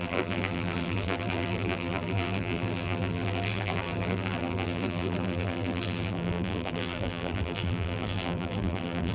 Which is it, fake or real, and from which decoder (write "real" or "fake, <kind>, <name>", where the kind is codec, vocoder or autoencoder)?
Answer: fake, vocoder, BigVGAN v2